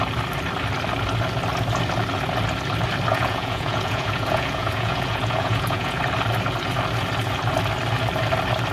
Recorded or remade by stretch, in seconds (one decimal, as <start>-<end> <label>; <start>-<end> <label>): 0.0-3.1 recorded; 3.1-6.0 remade; 6.0-8.7 recorded